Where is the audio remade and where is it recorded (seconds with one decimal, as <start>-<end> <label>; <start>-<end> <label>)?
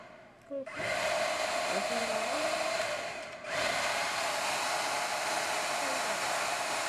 0.0-0.9 remade; 0.9-2.0 recorded; 2.0-4.1 remade; 4.1-6.9 recorded